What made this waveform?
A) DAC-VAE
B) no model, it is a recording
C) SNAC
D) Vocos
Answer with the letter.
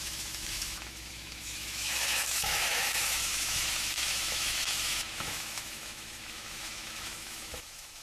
A